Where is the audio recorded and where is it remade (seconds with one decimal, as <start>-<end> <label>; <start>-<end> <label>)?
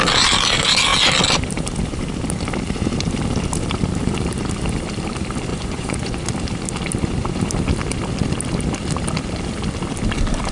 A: 0.0-5.5 recorded; 5.5-6.2 remade; 6.2-10.5 recorded